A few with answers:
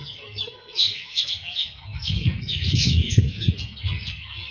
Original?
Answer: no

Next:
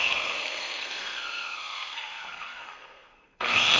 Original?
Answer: no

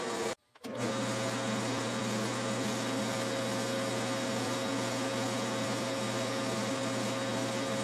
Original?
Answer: yes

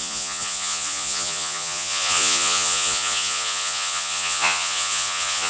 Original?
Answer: no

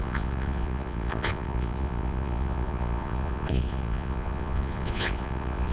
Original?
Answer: no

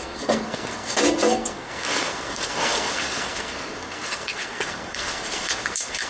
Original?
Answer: no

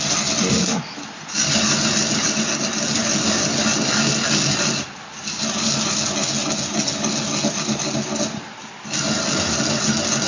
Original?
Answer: yes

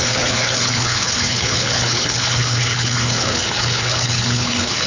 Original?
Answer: no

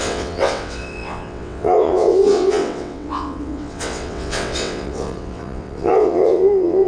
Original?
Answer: no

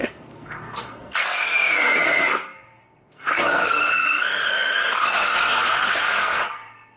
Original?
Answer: no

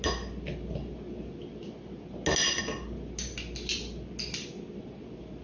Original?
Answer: yes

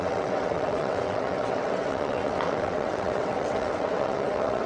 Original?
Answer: no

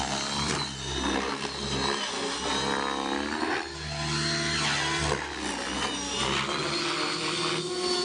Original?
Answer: yes